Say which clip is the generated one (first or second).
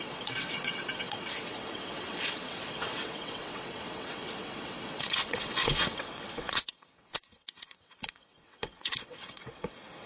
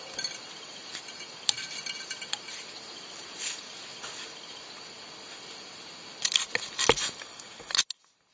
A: first